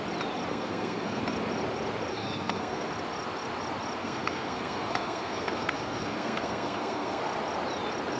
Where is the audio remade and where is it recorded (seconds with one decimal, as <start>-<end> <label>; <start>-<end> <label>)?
0.0-0.5 recorded; 0.5-1.2 remade; 1.2-2.1 recorded; 2.1-2.9 remade; 2.9-4.0 recorded; 4.0-7.2 remade; 7.2-8.2 recorded